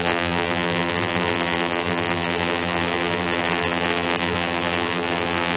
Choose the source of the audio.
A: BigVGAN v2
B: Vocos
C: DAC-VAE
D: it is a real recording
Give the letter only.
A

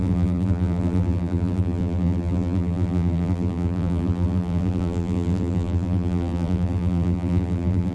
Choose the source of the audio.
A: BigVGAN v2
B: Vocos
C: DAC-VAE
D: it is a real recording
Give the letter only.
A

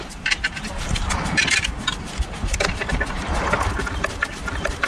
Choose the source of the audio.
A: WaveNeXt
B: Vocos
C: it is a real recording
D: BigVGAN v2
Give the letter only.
D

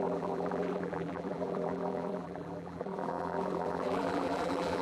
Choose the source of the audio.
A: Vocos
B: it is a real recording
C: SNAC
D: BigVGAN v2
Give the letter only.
D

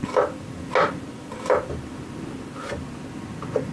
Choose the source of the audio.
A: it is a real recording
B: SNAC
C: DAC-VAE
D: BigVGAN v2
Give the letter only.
A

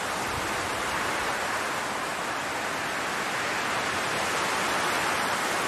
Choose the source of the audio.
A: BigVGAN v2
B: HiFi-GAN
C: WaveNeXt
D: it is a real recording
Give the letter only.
D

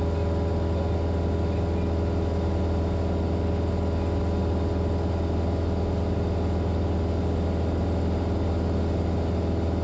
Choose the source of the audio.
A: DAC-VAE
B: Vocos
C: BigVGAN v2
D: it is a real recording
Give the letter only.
D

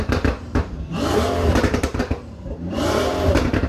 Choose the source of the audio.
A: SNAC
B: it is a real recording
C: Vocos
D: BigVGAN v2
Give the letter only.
D